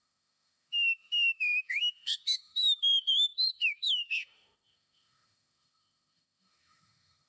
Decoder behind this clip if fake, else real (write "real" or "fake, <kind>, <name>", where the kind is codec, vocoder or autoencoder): fake, autoencoder, DAC-VAE